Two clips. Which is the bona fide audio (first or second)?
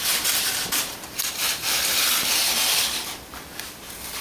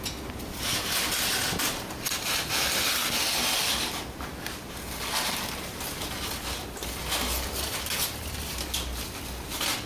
second